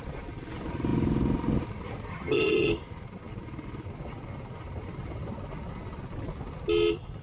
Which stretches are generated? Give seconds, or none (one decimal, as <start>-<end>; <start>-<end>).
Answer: 2.1-2.7